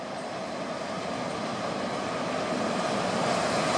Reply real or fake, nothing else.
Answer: real